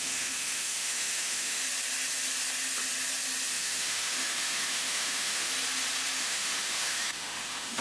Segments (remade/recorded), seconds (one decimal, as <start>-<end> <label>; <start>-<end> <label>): 0.0-1.6 remade; 1.6-3.5 recorded; 3.5-5.5 remade; 5.5-6.2 recorded; 6.2-7.8 remade